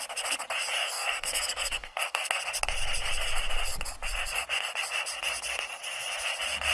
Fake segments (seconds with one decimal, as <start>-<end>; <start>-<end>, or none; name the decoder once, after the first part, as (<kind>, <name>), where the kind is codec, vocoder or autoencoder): 0.8-2.4 (codec, SNAC)